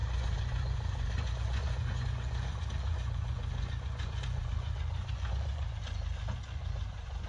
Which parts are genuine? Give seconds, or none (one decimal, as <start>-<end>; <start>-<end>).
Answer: none